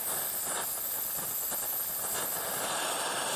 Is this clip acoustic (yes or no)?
yes